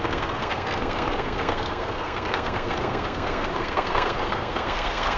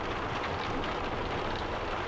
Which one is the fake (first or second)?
first